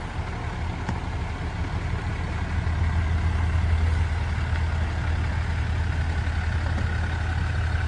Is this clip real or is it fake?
real